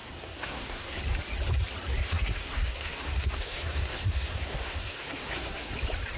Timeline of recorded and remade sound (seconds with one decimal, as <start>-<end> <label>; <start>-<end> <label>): 0.0-1.0 remade; 1.0-2.0 recorded; 2.0-5.7 remade; 5.7-6.2 recorded